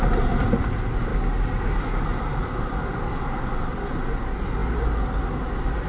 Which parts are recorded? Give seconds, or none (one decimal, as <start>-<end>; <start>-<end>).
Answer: 0.0-5.9